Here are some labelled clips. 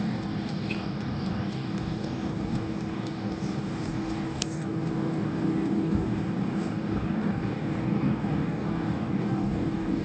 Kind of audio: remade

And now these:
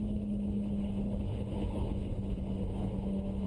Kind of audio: remade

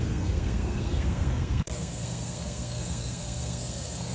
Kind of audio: remade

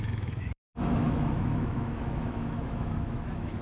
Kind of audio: remade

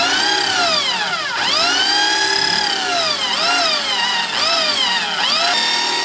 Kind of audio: recorded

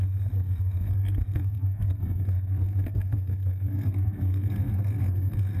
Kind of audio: remade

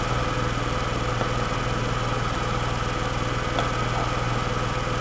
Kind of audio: recorded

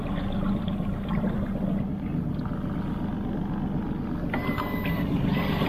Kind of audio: recorded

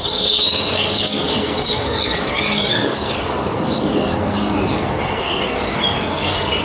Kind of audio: remade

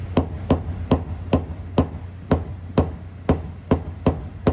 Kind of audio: recorded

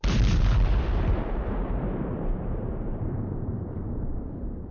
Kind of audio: remade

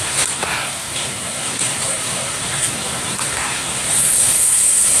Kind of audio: remade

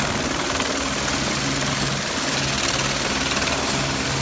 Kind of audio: recorded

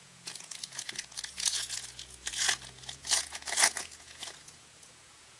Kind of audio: remade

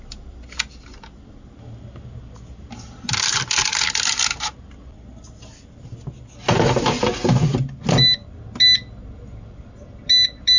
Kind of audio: recorded